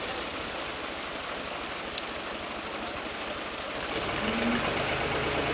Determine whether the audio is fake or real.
real